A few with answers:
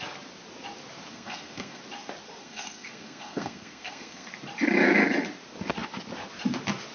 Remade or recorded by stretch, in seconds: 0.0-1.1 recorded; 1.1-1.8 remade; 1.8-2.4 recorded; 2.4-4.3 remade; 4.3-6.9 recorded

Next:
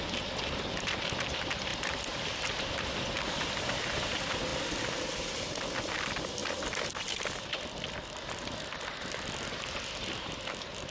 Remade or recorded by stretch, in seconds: 0.0-10.9 recorded

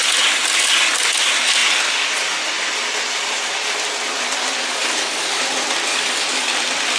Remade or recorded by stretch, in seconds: 0.0-4.6 recorded; 4.6-5.4 remade; 5.4-5.9 recorded; 5.9-6.5 remade; 6.5-7.0 recorded

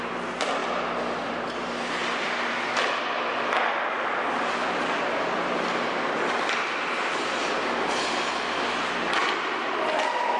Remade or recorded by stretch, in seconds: 0.0-10.4 recorded